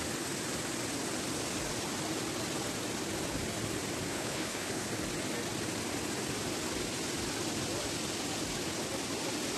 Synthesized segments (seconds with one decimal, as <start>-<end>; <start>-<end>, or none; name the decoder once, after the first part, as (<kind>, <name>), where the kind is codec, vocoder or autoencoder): 4.1-4.9 (codec, HILCodec)